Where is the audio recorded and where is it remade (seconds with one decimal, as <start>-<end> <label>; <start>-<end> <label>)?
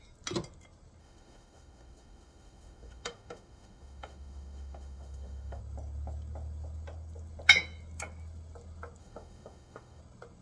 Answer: 0.0-1.0 recorded; 1.0-5.6 remade; 5.6-9.0 recorded; 9.0-10.0 remade; 10.0-10.4 recorded